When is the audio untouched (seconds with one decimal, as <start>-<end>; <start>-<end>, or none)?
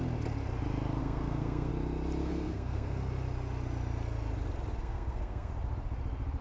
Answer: 0.0-1.0; 1.7-2.2; 3.1-4.8; 5.5-6.4